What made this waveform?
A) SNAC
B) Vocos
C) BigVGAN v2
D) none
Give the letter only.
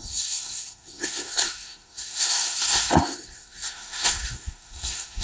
A